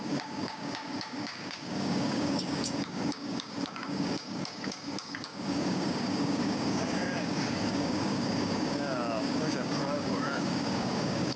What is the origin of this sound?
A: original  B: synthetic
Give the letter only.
B